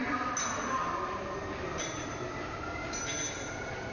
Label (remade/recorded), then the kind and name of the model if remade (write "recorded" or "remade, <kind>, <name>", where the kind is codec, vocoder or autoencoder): recorded